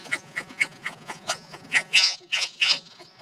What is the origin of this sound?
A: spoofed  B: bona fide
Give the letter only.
A